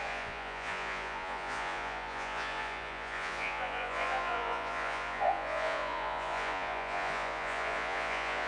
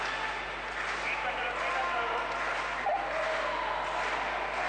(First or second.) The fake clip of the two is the first